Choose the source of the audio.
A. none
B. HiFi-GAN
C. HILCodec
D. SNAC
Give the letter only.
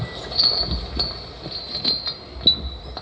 A